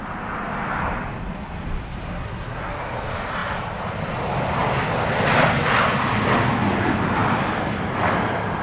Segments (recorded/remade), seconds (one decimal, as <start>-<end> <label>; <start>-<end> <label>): 0.0-2.1 recorded; 2.1-2.7 remade; 2.7-8.6 recorded